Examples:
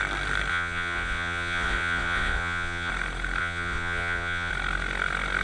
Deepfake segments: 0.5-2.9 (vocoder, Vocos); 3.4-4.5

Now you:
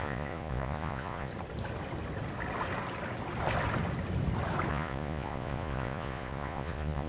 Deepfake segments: 0.0-1.3 (vocoder, Vocos); 4.7-7.1

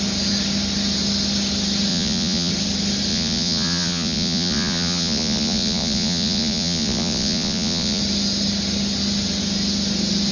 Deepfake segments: 1.9-2.5 (vocoder, Vocos); 3.1-8.0

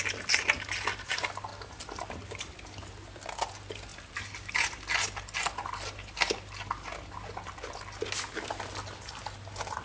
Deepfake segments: none

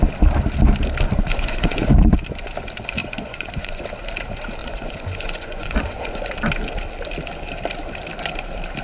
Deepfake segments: 1.3-1.9 (vocoder, Vocos); 3.0-3.8; 4.6-6.3

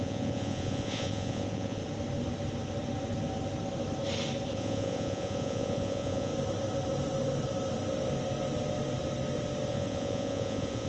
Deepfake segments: 0.0-1.8 (vocoder, Vocos); 4.5-6.3; 9.7-10.9

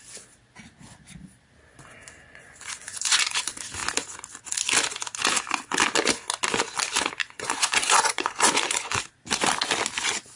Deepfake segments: 2.3-3.4 (vocoder, Vocos); 7.2-9.0

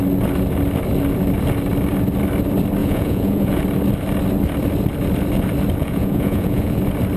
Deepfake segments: 2.8-3.6 (vocoder, Vocos); 5.8-6.8